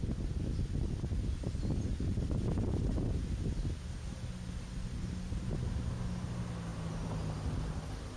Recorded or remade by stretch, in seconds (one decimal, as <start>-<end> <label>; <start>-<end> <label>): 0.0-8.2 recorded

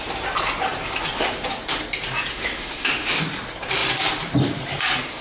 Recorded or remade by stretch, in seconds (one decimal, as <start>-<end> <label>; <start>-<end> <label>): 0.0-2.3 recorded; 2.3-3.2 remade; 3.2-5.2 recorded

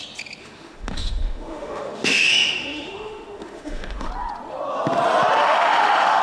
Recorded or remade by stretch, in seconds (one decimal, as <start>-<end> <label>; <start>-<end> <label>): 0.0-0.4 recorded; 0.4-4.1 remade; 4.1-5.4 recorded; 5.4-6.2 remade